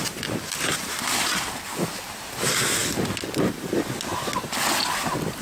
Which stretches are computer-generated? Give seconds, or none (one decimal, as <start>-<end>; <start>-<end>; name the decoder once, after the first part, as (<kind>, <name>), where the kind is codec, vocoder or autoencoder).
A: none